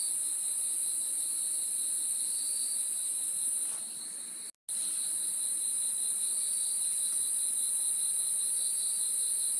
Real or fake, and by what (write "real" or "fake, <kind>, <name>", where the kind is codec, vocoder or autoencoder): real